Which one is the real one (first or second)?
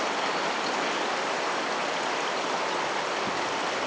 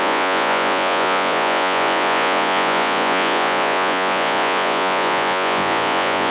first